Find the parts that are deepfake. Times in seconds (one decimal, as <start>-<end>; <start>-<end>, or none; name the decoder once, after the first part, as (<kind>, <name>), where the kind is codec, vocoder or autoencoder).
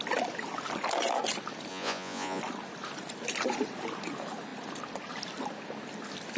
1.7-2.4 (vocoder, Vocos)